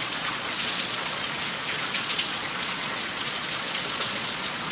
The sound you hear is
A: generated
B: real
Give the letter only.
A